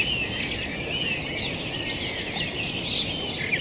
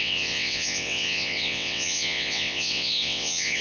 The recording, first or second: first